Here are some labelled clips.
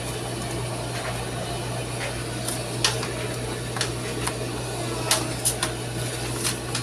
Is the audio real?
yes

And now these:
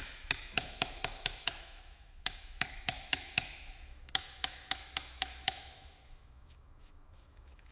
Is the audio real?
no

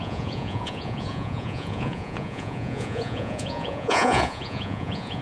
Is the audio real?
no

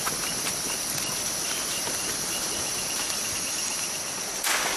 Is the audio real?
yes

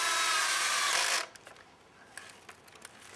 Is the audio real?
yes